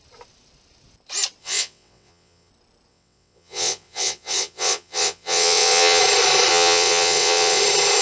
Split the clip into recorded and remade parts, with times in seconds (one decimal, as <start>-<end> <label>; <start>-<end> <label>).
0.0-1.4 recorded; 1.4-2.5 remade; 2.5-2.9 recorded; 2.9-6.0 remade; 6.0-6.5 recorded; 6.5-7.6 remade; 7.6-8.0 recorded